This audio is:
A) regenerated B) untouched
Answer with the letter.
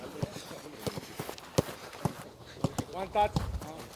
B